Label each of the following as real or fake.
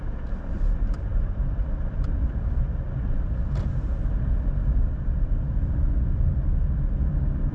fake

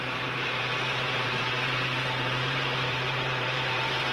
fake